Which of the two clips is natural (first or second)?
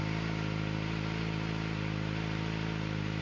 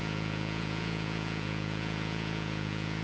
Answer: first